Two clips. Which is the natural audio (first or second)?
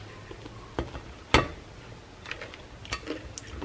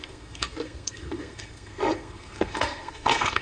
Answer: first